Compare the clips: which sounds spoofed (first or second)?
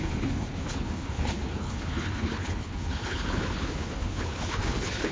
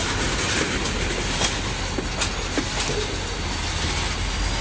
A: first